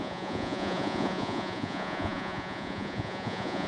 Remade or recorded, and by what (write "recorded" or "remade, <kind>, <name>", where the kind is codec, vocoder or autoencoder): remade, vocoder, Vocos